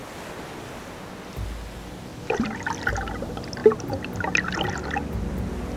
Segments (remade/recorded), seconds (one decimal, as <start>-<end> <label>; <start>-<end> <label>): 0.0-1.3 recorded; 1.3-2.1 remade; 2.1-3.0 recorded; 3.0-3.6 remade; 3.6-5.8 recorded